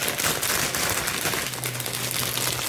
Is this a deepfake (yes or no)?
no